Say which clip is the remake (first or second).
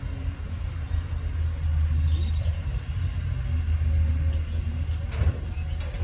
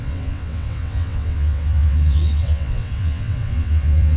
second